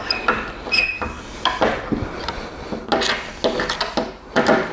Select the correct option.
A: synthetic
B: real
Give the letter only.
B